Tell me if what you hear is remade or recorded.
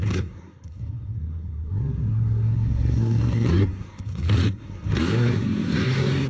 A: remade